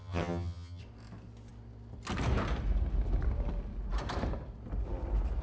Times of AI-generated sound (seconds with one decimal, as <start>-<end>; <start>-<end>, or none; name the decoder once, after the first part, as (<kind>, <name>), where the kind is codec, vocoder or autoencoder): 0.0-0.8 (vocoder, HiFi-GAN)